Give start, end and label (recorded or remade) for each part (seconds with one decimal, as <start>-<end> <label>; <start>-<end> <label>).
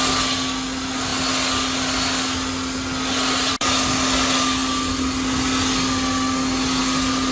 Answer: 0.0-7.3 recorded